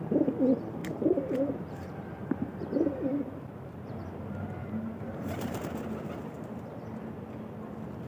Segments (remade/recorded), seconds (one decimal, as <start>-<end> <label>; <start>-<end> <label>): 0.0-0.8 recorded; 0.8-5.6 remade; 5.6-8.1 recorded